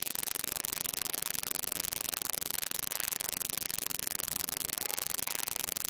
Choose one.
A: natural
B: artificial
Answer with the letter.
B